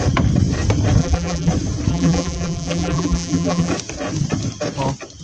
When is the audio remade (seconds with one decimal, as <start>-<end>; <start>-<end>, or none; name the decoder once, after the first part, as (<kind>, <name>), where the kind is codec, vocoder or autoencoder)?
1.0-1.5 (vocoder, BigVGAN v2); 1.9-3.7